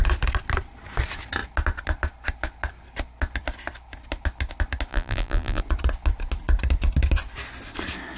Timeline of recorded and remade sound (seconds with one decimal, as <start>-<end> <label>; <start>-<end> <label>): 0.0-4.9 recorded; 4.9-5.6 remade; 5.6-8.2 recorded